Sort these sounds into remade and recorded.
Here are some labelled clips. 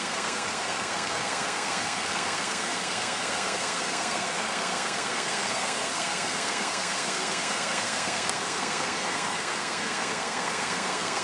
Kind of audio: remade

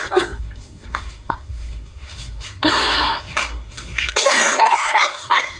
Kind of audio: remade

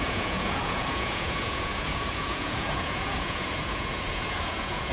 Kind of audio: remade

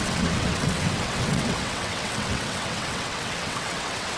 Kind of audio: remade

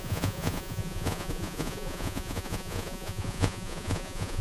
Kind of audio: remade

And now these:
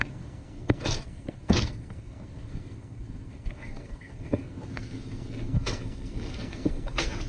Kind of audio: remade